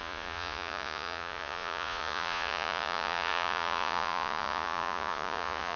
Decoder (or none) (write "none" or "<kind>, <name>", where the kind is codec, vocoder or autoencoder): vocoder, Vocos